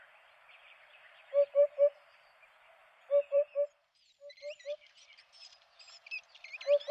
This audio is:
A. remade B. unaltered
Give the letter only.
A